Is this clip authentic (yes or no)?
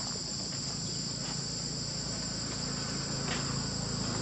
yes